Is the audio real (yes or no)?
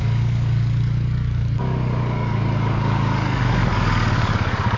no